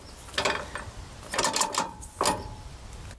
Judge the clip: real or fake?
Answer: real